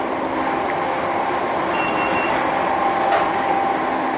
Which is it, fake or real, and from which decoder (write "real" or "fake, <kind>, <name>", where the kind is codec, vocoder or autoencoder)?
real